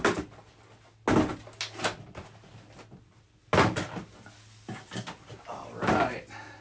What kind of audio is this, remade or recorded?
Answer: recorded